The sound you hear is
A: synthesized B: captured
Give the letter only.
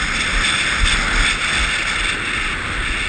B